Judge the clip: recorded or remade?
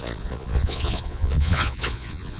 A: remade